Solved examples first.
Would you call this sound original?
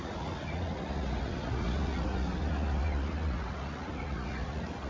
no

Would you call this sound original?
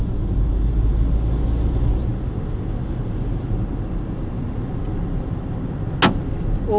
yes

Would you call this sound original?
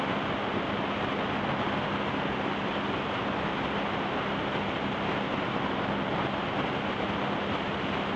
yes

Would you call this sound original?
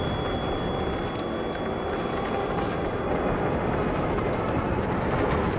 yes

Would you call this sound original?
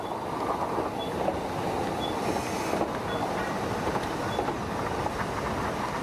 yes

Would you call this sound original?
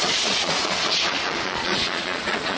no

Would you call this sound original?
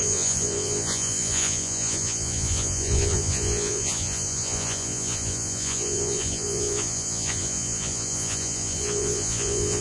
no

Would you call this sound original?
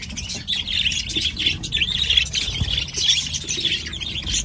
yes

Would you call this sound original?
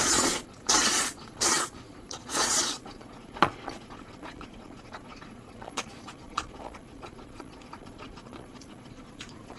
no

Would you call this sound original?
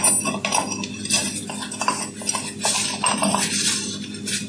yes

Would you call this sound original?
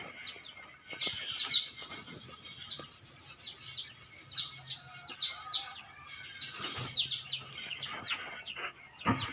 yes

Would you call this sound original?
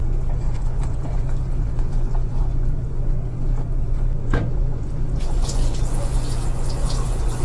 no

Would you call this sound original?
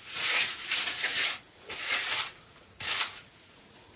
no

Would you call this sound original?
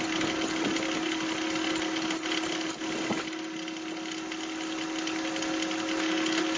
yes